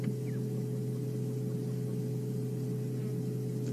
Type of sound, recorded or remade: recorded